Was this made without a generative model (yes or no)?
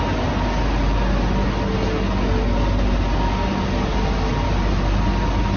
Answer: yes